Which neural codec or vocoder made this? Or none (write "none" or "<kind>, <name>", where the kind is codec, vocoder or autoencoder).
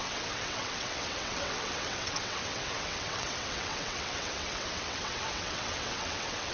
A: vocoder, WaveNeXt